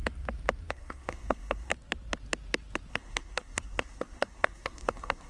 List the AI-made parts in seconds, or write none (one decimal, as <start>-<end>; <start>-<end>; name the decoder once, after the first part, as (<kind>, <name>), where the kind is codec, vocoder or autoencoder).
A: 0.7-1.7 (codec, SNAC); 2.9-5.3